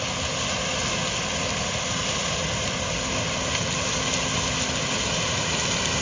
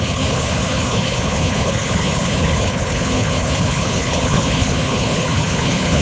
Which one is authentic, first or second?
first